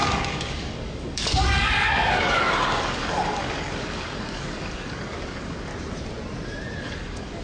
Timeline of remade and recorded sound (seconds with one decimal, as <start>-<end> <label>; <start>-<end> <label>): 0.0-5.7 remade; 5.7-6.8 recorded; 6.8-7.4 remade